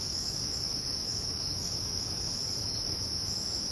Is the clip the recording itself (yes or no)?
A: no